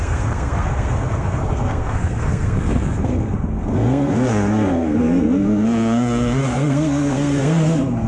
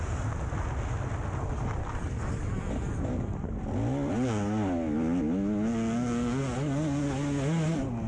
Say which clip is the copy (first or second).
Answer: first